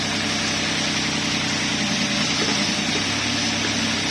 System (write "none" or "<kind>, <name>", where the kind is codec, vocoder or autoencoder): none